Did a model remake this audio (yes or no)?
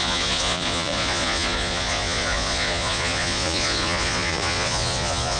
yes